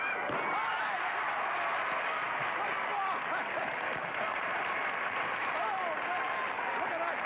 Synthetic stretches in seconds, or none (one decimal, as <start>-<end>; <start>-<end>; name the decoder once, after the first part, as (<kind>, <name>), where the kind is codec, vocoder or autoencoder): 4.3-5.7 (vocoder, BigVGAN v2)